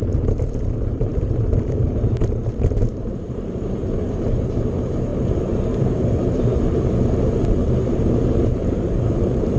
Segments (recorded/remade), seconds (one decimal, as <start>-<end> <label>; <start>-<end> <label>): 0.0-9.6 remade